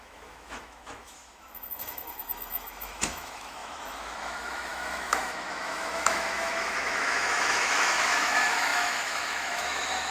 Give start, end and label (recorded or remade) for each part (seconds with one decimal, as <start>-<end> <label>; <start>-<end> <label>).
0.0-10.1 remade